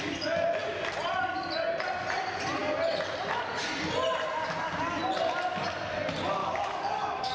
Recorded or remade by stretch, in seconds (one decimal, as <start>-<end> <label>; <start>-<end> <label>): 0.0-6.4 recorded; 6.4-7.3 remade